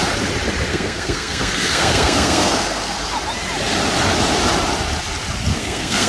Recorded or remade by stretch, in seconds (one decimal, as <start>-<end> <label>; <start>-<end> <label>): 0.0-0.7 recorded; 0.7-3.0 remade; 3.0-5.5 recorded; 5.5-6.1 remade